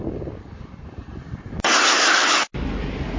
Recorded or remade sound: recorded